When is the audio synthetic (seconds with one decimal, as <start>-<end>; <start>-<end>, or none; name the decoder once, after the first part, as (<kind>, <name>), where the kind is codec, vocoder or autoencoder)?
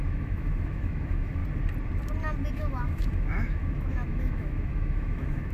0.0-1.4 (autoencoder, DAC-VAE); 2.5-5.5